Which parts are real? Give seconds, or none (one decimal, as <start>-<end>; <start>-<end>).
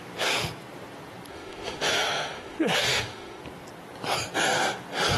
0.0-1.3; 3.4-5.2